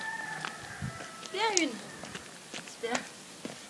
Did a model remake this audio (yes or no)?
no